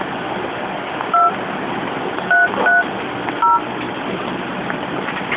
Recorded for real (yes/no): yes